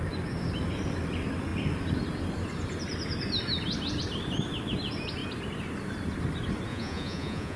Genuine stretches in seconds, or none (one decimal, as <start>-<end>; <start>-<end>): 0.0-6.7